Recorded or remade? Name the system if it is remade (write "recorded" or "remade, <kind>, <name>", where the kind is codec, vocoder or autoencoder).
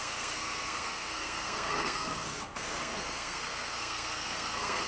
remade, codec, SNAC